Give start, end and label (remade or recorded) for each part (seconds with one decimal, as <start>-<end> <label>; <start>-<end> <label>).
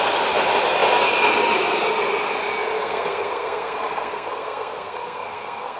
0.0-2.8 recorded; 2.8-5.8 remade